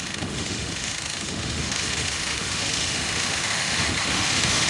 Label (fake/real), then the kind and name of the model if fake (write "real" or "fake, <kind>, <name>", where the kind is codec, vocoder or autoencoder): fake, autoencoder, DAC-VAE